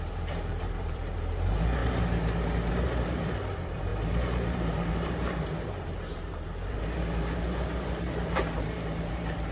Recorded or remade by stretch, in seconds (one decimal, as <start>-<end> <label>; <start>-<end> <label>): 0.0-1.8 remade; 1.8-2.7 recorded; 2.7-9.5 remade